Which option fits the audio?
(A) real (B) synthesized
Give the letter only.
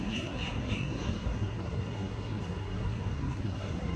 B